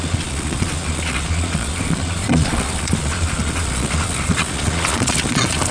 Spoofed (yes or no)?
yes